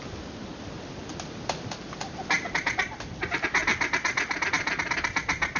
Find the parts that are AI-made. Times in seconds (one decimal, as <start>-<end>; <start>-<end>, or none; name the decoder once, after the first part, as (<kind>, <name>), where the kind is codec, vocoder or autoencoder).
none